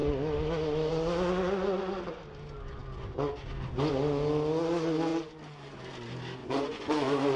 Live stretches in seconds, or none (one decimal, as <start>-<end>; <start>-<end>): 0.0-6.4